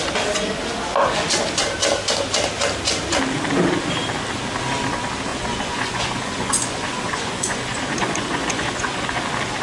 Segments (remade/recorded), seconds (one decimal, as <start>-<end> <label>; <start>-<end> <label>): 0.0-5.3 recorded; 5.3-9.2 remade; 9.2-9.6 recorded